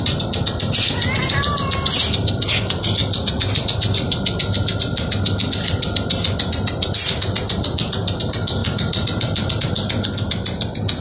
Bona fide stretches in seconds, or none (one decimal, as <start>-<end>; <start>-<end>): 0.0-3.0; 6.9-11.0